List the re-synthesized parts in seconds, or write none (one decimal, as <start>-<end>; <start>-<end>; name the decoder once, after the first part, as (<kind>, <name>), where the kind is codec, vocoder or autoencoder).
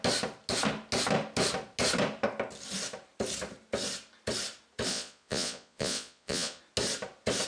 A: 4.9-6.6 (vocoder, Vocos)